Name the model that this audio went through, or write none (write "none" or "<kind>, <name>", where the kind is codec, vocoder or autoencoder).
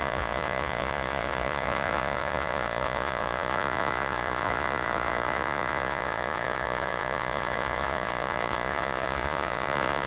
vocoder, Vocos